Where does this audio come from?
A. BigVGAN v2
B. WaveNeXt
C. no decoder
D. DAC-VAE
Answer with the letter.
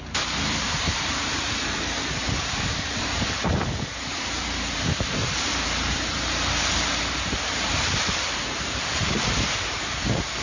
A